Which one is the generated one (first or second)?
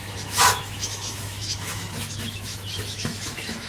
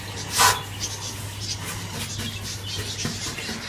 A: first